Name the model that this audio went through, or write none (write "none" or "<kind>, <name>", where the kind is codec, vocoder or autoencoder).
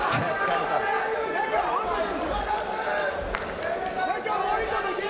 none